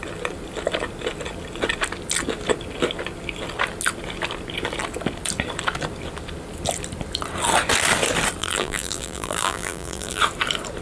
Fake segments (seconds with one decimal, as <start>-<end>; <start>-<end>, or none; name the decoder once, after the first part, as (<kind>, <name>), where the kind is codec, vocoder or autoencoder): 8.4-10.2 (vocoder, BigVGAN v2)